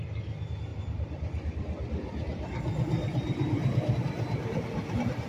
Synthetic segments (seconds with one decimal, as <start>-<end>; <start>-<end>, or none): 0.7-3.9